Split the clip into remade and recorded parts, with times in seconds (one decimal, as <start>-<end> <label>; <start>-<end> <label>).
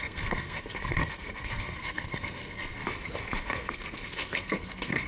0.0-2.8 remade; 2.8-3.4 recorded; 3.4-5.1 remade